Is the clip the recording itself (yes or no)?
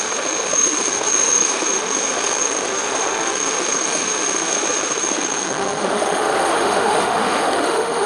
no